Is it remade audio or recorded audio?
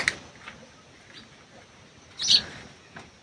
recorded